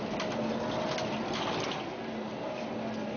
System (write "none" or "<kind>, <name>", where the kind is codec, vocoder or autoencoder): none